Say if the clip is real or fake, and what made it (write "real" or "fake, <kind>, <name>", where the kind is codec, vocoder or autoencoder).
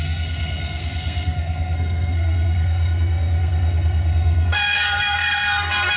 fake, codec, SNAC